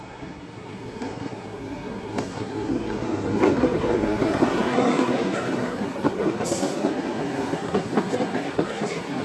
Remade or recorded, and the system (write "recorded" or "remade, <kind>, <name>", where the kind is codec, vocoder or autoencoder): remade, codec, SNAC